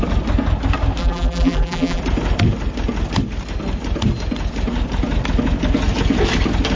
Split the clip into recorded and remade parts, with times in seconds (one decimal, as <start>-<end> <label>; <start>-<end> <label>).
0.0-1.0 recorded; 1.0-2.0 remade; 2.0-6.8 recorded